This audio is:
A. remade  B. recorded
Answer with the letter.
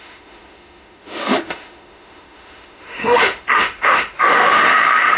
A